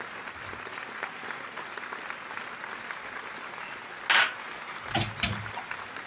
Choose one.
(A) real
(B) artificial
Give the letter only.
A